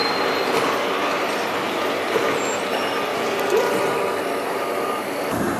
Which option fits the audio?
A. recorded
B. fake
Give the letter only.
A